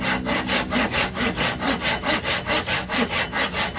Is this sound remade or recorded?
recorded